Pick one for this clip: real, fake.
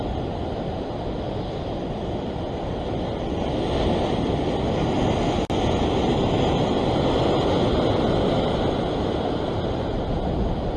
real